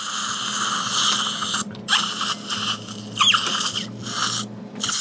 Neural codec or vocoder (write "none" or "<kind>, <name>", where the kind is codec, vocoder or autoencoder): none